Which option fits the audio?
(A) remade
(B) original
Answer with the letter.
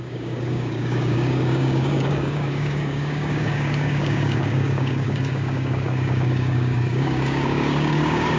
A